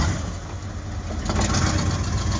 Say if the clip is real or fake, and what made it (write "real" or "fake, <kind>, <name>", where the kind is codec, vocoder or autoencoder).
real